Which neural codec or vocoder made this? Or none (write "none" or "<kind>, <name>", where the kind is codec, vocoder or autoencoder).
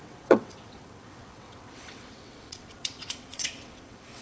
vocoder, WaveNeXt